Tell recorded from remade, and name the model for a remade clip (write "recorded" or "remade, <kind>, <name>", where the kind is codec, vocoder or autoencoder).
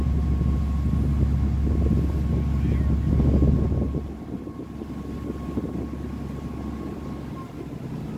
recorded